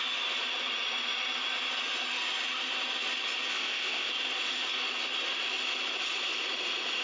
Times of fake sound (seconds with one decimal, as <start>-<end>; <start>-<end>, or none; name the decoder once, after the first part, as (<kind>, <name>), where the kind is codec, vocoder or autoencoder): 3.5-4.1 (codec, ZipCodec)